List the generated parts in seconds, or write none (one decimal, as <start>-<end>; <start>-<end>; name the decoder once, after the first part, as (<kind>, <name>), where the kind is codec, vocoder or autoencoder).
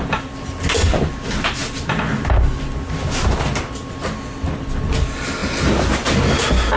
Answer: none